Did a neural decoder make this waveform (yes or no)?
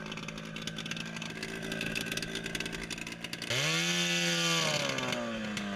no